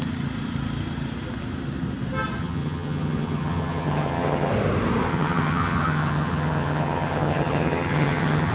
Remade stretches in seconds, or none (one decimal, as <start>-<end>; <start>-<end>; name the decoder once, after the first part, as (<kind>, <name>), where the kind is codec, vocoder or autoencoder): 2.4-4.5 (vocoder, HiFi-GAN); 5.1-8.5